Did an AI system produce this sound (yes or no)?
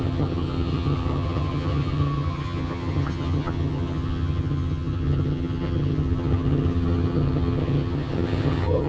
yes